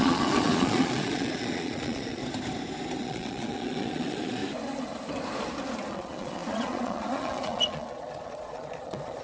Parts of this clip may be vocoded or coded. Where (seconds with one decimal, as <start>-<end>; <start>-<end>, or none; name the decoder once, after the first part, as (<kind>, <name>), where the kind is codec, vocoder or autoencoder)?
0.0-2.2 (vocoder, Vocos); 3.0-4.4; 5.9-9.2